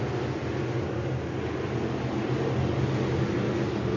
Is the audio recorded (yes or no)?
yes